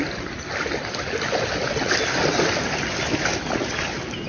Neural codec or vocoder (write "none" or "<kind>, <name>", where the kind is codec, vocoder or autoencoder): none